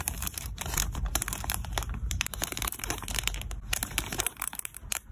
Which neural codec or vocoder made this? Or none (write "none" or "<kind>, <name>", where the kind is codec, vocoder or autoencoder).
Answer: vocoder, BigVGAN v2